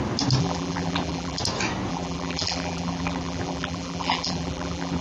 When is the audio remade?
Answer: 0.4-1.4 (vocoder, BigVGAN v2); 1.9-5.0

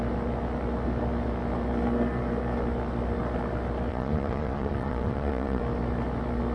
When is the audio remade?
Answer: 3.9-5.6 (vocoder, Vocos)

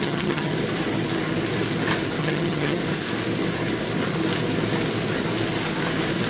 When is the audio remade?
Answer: 0.0-0.5 (vocoder, HiFi-GAN); 2.2-2.8

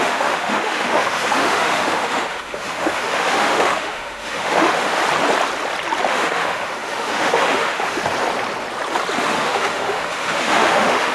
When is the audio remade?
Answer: 0.0-5.0 (autoencoder, DAC-VAE); 6.1-8.0; 9.2-11.1